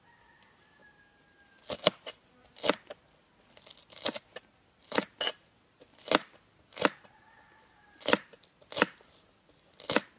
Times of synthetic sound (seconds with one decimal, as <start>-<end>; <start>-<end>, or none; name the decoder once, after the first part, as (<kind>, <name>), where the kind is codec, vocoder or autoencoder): none